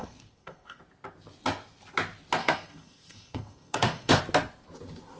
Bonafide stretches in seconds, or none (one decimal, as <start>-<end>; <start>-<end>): 0.8-2.4; 4.2-5.2